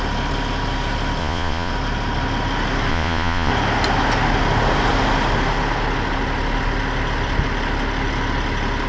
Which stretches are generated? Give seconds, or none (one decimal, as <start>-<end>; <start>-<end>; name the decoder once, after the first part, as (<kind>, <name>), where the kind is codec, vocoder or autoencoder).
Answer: 1.2-1.7 (vocoder, Vocos); 2.9-3.5